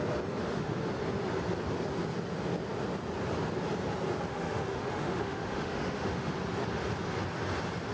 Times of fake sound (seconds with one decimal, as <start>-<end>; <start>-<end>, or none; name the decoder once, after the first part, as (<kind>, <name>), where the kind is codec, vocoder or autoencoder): 0.4-0.9 (autoencoder, DAC-VAE); 4.3-6.3